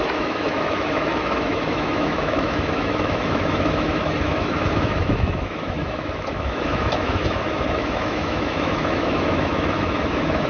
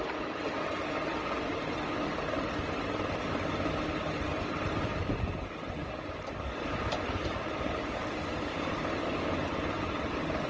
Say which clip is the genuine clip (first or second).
second